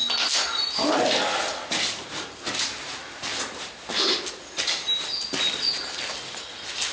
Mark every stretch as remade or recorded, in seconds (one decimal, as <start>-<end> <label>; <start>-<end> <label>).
0.0-6.9 recorded